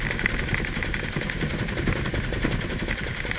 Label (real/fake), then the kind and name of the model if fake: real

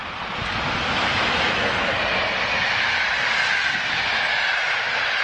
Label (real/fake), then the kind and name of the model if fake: real